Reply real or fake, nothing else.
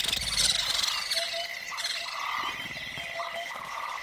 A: real